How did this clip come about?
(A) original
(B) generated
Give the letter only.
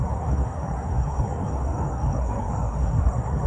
B